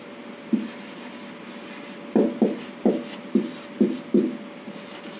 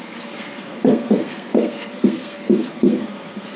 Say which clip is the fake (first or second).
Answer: second